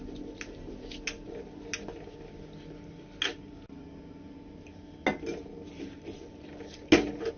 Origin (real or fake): real